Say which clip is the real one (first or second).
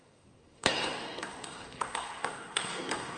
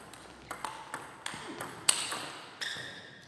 second